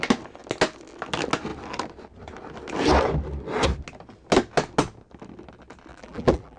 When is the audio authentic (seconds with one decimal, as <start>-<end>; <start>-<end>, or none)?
0.0-5.9